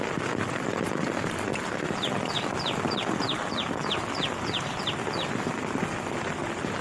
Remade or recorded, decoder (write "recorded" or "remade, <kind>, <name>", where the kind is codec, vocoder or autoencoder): recorded